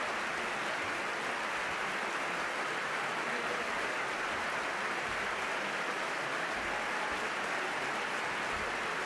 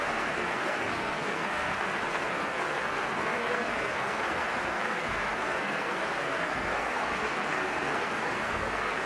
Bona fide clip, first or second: first